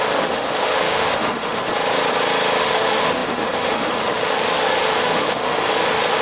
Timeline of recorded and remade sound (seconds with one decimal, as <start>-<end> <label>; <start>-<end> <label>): 0.0-1.6 remade; 1.6-2.6 recorded; 2.6-6.2 remade